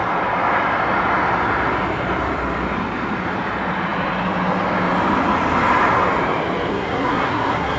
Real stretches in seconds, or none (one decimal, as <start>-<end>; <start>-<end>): 0.0-6.7

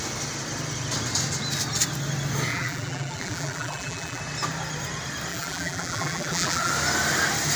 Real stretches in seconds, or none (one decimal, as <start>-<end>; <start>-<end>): 0.0-2.5; 4.2-5.3; 6.7-7.6

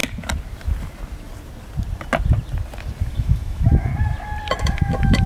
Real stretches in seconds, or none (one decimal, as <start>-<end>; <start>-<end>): 0.0-3.2; 3.9-4.6

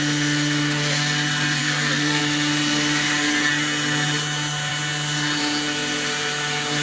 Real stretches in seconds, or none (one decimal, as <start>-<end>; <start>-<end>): 0.0-1.6; 2.2-6.8